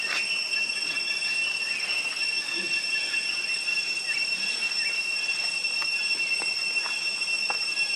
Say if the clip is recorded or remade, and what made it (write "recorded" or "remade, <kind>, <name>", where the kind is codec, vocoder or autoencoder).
recorded